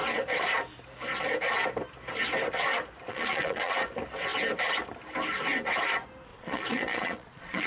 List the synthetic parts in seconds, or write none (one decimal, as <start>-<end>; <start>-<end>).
3.1-3.7; 6.3-7.7